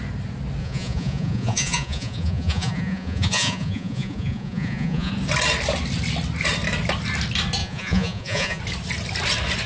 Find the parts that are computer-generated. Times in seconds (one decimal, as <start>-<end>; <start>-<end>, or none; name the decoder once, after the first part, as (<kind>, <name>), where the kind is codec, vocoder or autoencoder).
0.6-5.1 (vocoder, Vocos); 7.6-8.6